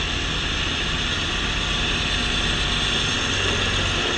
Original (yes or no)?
yes